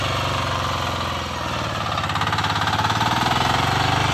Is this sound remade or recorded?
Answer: recorded